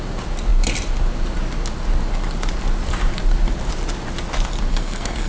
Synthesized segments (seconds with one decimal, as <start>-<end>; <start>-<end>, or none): 4.7-5.3